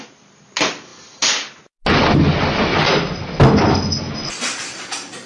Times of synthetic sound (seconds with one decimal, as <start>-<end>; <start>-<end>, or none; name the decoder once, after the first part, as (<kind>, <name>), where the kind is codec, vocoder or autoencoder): none